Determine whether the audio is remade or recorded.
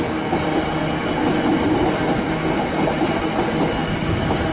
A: recorded